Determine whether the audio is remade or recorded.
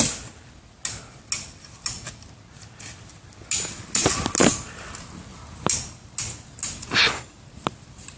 recorded